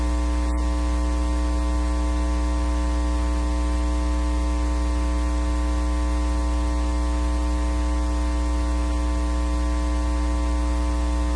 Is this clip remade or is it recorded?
recorded